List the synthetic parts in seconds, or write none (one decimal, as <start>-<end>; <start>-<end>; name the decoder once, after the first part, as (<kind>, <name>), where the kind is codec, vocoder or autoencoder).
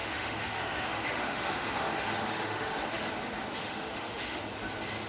0.0-3.1 (autoencoder, DAC-VAE); 3.6-4.4